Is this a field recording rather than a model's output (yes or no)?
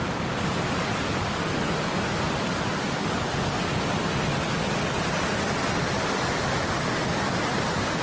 yes